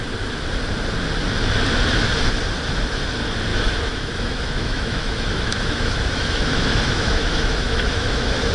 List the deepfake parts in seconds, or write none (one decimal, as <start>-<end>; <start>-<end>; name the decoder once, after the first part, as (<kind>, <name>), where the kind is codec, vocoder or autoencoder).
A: 3.5-8.5 (autoencoder, DAC-VAE)